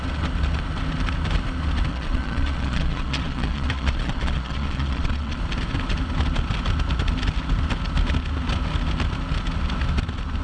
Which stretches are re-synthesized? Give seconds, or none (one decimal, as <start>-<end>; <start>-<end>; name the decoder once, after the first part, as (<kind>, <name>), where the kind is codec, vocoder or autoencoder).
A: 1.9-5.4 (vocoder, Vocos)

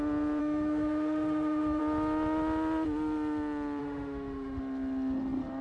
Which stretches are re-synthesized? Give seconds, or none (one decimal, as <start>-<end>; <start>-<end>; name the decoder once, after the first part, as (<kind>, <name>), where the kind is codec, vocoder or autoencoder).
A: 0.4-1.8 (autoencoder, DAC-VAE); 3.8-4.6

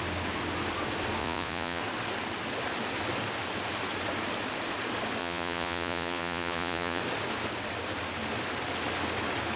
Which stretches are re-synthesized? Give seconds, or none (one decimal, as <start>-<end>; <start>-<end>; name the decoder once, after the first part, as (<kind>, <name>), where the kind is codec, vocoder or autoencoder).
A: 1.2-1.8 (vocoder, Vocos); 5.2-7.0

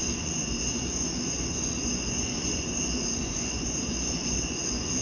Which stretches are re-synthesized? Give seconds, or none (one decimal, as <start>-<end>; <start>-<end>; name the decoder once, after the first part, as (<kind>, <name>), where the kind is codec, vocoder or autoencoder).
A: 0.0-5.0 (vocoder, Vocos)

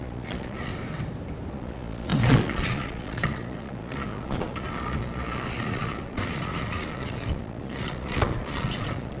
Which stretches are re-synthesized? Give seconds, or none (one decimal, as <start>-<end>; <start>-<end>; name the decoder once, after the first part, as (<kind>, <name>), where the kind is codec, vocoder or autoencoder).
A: 0.0-0.7 (vocoder, Vocos); 1.5-9.2

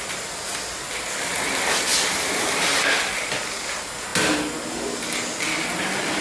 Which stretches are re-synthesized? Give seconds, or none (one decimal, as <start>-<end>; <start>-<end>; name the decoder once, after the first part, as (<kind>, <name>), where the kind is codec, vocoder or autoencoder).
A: 1.9-3.4 (vocoder, BigVGAN v2)

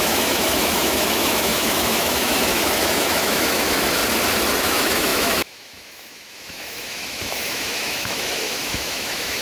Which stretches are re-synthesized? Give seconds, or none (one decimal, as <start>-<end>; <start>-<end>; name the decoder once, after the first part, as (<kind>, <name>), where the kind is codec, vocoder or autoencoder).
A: 0.0-4.0 (autoencoder, DAC-VAE); 4.6-9.4

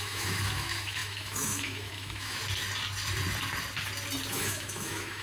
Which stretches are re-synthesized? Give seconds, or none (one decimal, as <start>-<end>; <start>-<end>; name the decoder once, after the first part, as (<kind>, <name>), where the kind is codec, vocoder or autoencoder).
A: 0.0-2.4 (autoencoder, DAC-VAE); 4.3-5.2